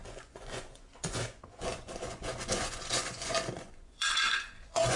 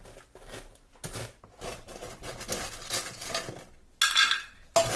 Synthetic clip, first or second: first